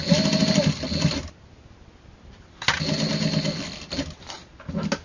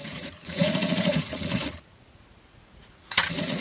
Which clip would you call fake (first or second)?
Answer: second